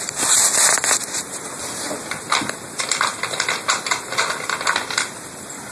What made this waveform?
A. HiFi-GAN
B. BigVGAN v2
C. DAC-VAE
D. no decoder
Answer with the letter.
B